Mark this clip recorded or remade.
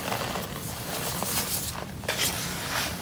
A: recorded